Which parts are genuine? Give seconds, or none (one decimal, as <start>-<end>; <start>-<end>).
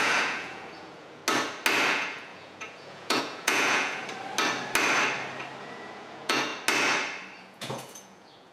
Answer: 1.2-1.9; 4.0-5.6; 6.5-7.4